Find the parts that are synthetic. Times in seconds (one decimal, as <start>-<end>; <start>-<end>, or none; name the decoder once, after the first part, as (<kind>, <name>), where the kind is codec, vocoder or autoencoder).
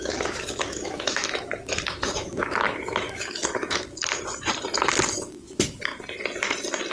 0.0-4.0 (autoencoder, DAC-VAE); 5.2-5.9